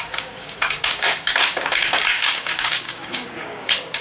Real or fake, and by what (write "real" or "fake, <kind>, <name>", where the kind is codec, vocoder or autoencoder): fake, codec, DAC